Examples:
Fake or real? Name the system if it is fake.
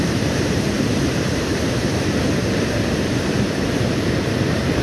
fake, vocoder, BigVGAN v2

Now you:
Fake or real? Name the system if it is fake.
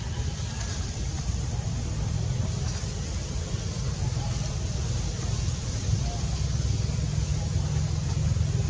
fake, vocoder, BigVGAN v2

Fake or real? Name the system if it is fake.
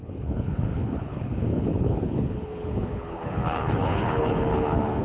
fake, codec, HILCodec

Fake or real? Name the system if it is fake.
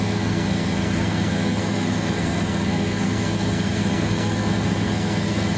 fake, codec, SNAC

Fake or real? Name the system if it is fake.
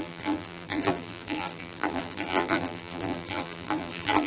fake, vocoder, BigVGAN v2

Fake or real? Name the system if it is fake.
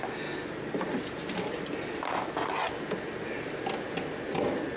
real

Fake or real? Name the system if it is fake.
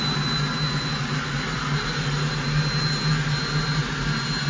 real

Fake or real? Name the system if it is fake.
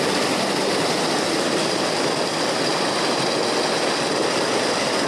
real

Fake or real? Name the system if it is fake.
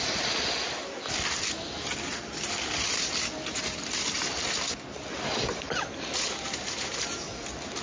real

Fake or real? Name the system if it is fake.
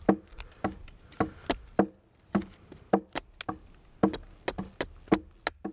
real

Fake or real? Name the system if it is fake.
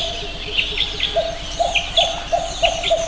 real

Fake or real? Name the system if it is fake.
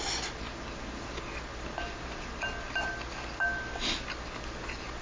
real